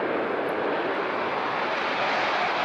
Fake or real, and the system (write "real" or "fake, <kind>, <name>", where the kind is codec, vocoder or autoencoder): real